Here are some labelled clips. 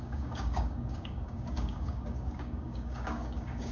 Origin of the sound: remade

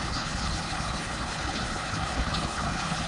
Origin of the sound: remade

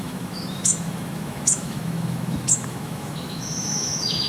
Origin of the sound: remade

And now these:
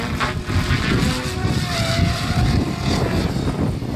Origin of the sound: remade